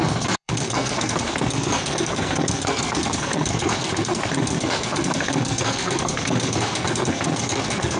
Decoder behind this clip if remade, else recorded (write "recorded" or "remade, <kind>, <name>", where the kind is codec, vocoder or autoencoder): remade, codec, SNAC